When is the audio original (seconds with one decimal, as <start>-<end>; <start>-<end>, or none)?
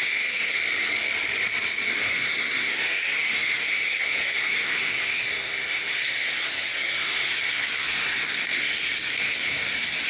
0.6-2.0